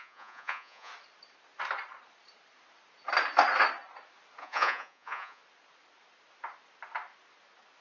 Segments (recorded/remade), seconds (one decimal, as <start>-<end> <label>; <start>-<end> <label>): 0.0-0.9 remade; 0.9-4.4 recorded; 4.4-5.4 remade; 5.4-7.8 recorded